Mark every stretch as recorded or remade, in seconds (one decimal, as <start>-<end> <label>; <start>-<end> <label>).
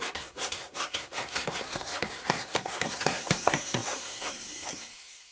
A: 0.0-5.3 remade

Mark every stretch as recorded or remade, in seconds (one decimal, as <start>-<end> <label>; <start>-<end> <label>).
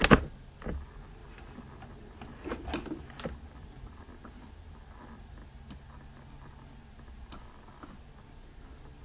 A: 0.0-9.0 recorded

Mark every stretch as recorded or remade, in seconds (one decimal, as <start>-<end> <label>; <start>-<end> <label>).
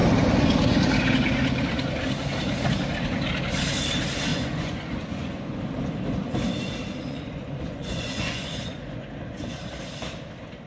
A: 0.0-4.3 recorded; 4.3-5.6 remade; 5.6-7.0 recorded; 7.0-9.4 remade; 9.4-10.7 recorded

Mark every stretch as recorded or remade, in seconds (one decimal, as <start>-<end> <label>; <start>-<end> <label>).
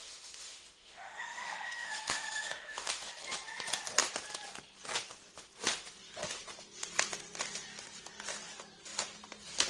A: 0.0-3.1 remade; 3.1-9.7 recorded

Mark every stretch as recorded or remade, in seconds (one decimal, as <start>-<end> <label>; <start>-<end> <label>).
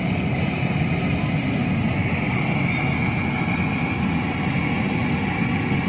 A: 0.0-5.9 recorded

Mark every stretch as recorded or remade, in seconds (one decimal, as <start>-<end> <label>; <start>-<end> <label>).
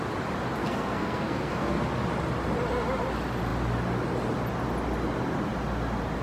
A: 0.0-0.6 recorded; 0.6-1.7 remade; 1.7-6.2 recorded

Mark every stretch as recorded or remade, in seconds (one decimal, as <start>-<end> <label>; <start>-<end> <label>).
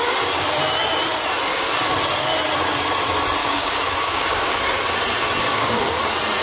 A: 0.0-3.4 recorded; 3.4-4.5 remade; 4.5-5.4 recorded; 5.4-6.0 remade; 6.0-6.4 recorded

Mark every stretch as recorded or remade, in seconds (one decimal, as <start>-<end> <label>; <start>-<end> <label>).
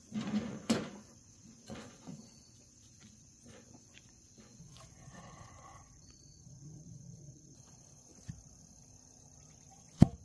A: 0.0-8.1 remade; 8.1-9.7 recorded; 9.7-10.2 remade